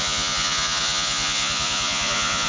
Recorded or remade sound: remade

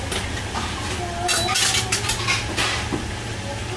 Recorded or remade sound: recorded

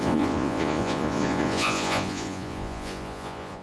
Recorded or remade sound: remade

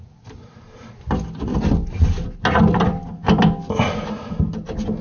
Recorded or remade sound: recorded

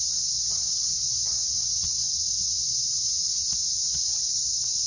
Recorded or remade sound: remade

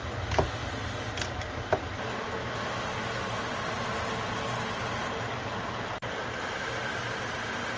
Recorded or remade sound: recorded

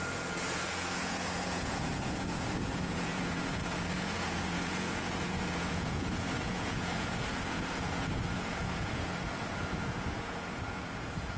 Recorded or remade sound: remade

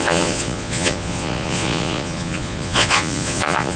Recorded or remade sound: remade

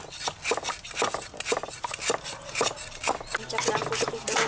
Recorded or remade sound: recorded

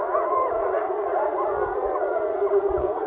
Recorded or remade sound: remade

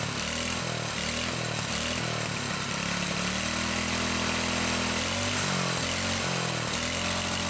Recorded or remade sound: recorded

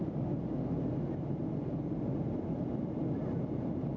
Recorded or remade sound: recorded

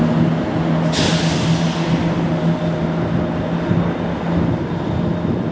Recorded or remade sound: recorded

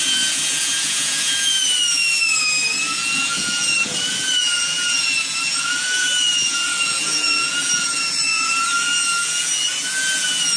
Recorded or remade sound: remade